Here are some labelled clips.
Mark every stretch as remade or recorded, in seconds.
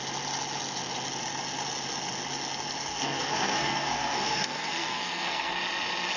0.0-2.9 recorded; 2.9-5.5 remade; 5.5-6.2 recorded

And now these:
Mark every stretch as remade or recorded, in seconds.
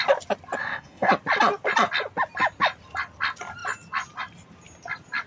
0.0-0.6 recorded; 0.6-1.1 remade; 1.1-5.3 recorded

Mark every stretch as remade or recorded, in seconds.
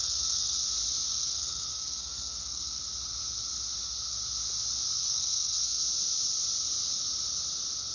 0.0-0.6 remade; 0.6-1.1 recorded; 1.1-2.8 remade; 2.8-5.0 recorded; 5.0-5.8 remade; 5.8-7.9 recorded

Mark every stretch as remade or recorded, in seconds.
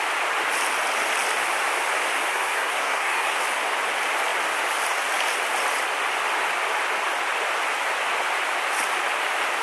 0.0-2.3 recorded; 2.3-3.4 remade; 3.4-9.6 recorded